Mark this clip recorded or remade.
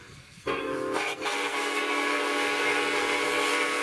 remade